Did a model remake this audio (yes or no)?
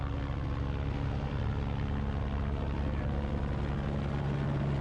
no